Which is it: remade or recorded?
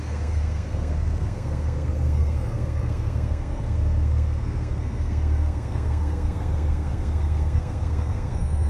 remade